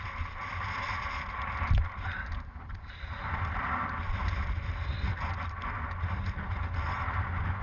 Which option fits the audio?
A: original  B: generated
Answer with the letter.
A